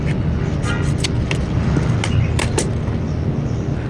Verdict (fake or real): real